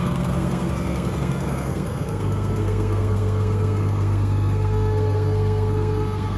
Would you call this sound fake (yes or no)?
yes